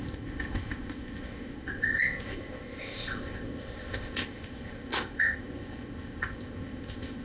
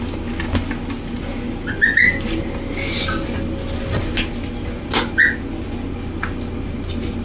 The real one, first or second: second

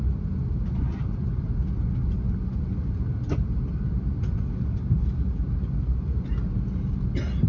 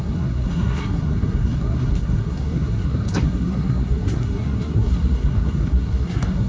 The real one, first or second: first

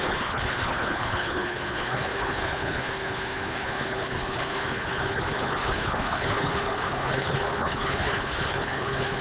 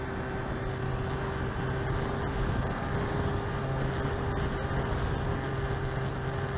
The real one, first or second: second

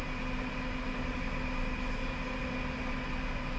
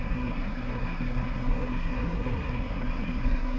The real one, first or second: first